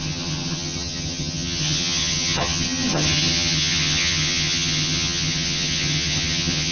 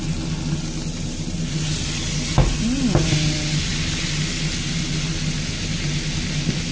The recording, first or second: second